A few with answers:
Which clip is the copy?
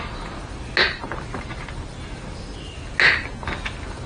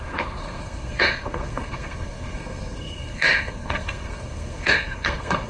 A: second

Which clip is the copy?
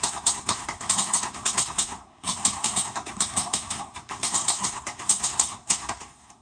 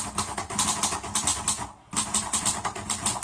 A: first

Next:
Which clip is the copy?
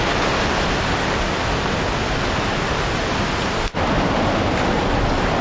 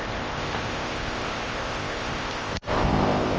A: second